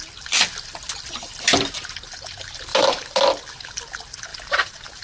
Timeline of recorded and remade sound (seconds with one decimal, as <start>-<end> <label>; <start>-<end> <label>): 0.0-5.0 recorded